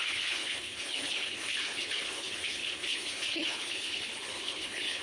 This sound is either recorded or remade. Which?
remade